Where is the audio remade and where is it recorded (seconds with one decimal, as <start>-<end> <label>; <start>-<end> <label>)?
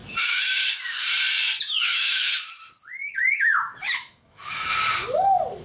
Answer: 0.0-0.7 remade; 0.7-1.9 recorded; 1.9-2.6 remade; 2.6-3.2 recorded; 3.2-4.7 remade; 4.7-5.6 recorded